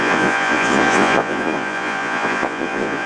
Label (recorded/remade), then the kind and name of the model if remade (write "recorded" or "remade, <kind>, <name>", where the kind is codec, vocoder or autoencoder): remade, vocoder, Vocos